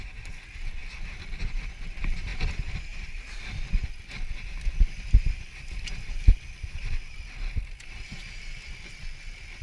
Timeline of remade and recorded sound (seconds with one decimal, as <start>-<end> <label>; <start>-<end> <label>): 0.0-9.6 recorded